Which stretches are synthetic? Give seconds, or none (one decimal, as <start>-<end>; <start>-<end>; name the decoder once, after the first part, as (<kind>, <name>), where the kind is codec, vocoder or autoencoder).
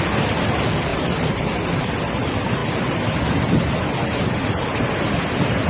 0.9-1.9 (vocoder, BigVGAN v2)